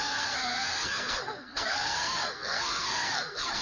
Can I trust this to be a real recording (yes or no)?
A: no